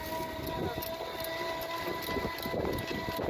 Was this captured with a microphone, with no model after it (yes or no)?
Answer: yes